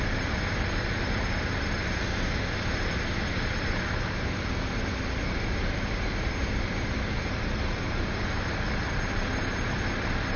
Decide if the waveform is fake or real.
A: real